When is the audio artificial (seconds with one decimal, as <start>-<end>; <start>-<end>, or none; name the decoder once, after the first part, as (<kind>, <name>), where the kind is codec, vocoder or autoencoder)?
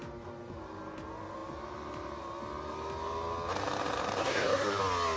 4.2-4.8 (codec, SNAC)